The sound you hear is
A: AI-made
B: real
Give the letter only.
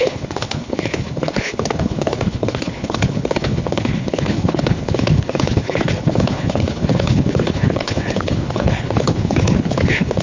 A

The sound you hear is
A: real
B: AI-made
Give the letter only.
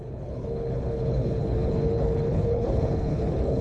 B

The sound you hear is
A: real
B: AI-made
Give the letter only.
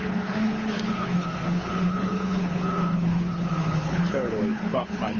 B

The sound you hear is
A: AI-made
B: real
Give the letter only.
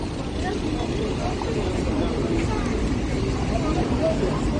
B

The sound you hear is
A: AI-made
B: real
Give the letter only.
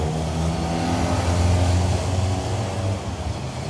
B